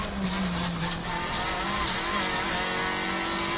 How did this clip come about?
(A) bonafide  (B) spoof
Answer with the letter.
A